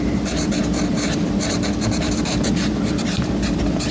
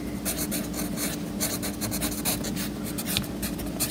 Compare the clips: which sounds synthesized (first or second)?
first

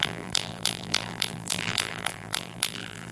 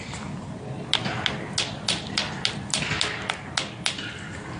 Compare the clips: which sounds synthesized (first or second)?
first